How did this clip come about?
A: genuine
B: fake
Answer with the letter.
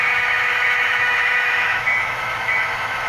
B